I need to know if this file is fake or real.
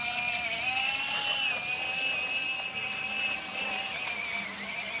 real